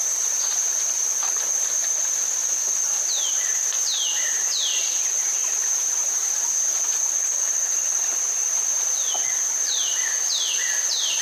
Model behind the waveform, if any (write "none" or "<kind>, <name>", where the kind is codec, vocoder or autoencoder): vocoder, BigVGAN v2